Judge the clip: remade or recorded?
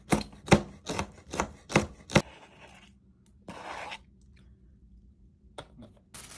recorded